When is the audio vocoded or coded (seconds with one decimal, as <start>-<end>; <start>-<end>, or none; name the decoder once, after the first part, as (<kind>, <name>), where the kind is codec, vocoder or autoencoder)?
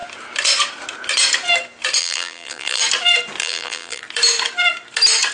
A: 2.0-2.8 (vocoder, BigVGAN v2); 3.4-4.0